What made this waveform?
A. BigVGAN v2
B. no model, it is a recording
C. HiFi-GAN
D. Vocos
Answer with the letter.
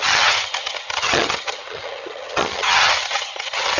C